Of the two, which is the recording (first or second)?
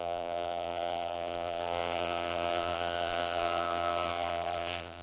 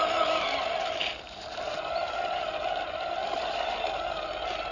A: second